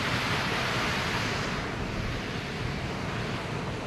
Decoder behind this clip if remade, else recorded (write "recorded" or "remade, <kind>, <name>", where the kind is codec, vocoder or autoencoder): remade, vocoder, BigVGAN v2